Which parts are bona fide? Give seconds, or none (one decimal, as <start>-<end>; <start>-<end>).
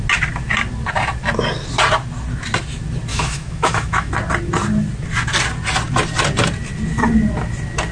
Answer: 0.0-3.1; 4.1-7.9